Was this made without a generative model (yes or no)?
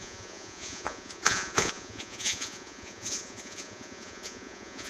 no